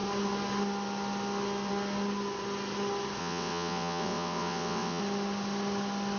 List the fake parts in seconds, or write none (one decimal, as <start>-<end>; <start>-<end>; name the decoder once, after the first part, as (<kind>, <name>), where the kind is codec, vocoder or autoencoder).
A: 3.2-5.0 (vocoder, WaveNeXt)